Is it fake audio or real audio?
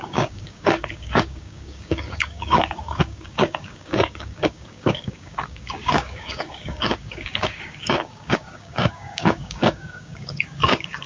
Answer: fake